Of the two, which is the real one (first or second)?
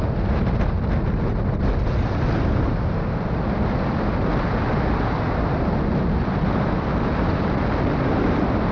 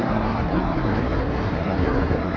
first